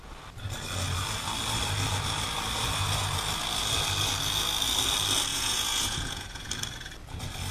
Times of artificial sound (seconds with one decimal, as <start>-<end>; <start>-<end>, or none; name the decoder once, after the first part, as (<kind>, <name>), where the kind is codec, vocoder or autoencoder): 5.3-6.5 (vocoder, Vocos)